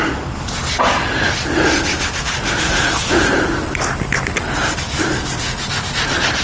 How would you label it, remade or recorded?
recorded